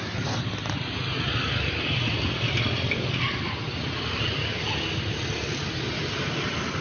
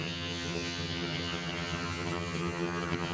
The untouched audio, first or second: first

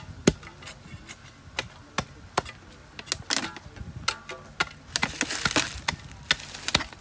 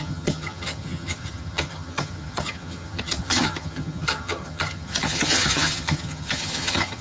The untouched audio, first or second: first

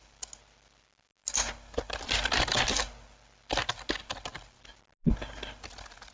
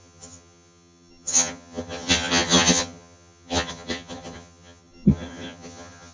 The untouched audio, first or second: first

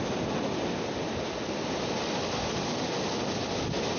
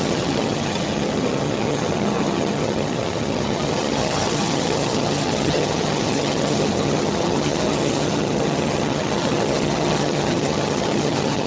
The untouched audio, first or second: first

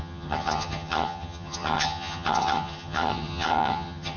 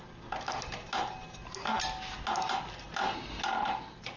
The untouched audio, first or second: second